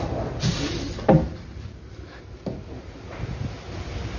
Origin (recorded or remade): recorded